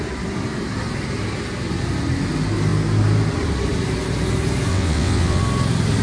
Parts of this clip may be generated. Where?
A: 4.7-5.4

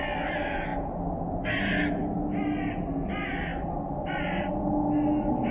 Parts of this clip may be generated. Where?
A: none